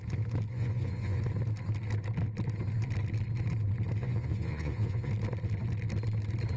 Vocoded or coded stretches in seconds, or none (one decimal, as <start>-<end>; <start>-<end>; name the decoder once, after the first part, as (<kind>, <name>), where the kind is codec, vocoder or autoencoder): 0.5-1.2 (vocoder, Vocos); 4.0-5.1